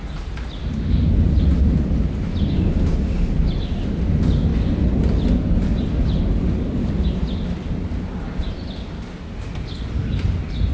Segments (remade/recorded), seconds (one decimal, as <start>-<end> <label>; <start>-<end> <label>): 0.0-0.6 recorded; 0.6-1.1 remade; 1.1-10.7 recorded